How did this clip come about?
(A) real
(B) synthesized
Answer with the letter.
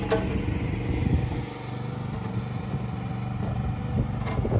A